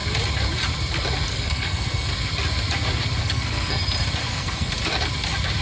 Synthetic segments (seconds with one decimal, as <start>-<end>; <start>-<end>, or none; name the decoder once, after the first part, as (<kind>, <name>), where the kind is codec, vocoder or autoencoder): 1.3-2.1 (codec, SNAC); 3.2-3.8; 4.2-4.7